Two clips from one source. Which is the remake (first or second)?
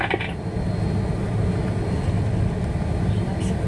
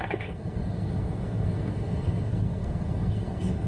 second